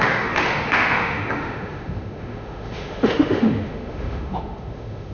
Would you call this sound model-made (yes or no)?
yes